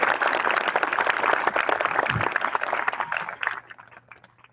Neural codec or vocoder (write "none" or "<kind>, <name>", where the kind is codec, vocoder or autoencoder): none